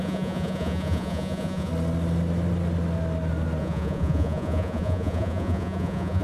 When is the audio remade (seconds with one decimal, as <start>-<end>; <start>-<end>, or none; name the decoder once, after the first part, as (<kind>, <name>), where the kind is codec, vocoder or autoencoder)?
0.0-1.7 (vocoder, Vocos); 3.6-6.2